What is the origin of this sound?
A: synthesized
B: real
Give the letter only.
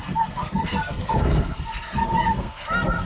A